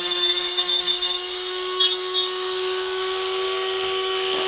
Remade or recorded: remade